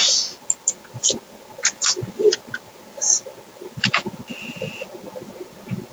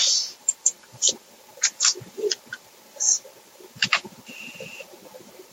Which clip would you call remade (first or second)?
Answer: second